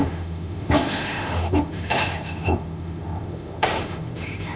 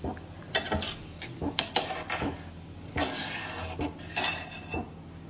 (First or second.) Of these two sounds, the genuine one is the second